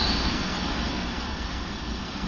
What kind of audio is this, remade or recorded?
remade